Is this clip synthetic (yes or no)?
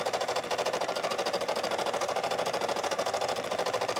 no